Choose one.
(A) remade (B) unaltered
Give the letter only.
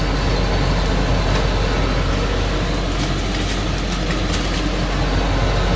B